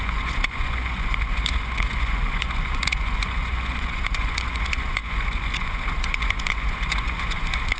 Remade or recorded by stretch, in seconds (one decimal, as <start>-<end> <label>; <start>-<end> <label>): 0.0-7.8 remade